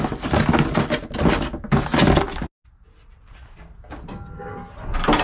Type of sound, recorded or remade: recorded